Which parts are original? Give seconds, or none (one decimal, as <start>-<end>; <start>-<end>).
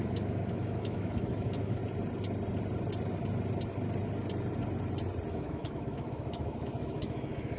1.8-5.3